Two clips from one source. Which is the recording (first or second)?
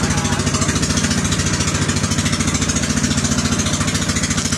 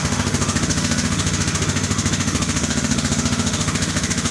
first